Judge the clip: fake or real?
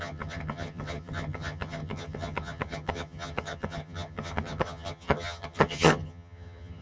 fake